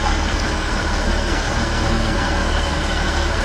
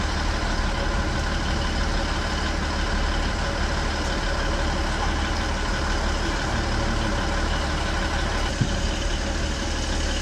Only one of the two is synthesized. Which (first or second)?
first